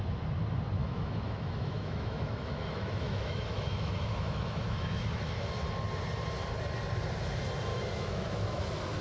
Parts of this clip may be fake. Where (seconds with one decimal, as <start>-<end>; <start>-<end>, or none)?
0.8-5.5; 7.7-8.6